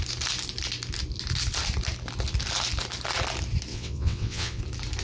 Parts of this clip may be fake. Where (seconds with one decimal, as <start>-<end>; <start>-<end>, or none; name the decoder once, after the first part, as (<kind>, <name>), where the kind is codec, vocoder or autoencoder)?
3.7-4.6 (vocoder, WaveNeXt)